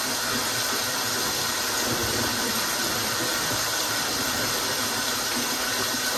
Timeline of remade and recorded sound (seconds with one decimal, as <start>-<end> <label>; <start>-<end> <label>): 0.0-2.0 recorded; 2.0-4.9 remade; 4.9-6.2 recorded